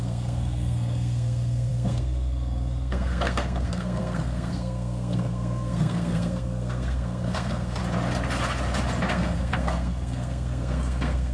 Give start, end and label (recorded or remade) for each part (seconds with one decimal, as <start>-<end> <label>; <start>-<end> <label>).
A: 0.0-7.8 remade; 7.8-9.1 recorded; 9.1-11.3 remade